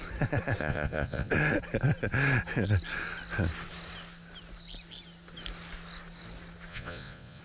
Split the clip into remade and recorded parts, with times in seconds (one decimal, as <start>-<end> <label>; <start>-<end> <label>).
0.0-0.6 recorded; 0.6-1.3 remade; 1.3-6.7 recorded; 6.7-7.4 remade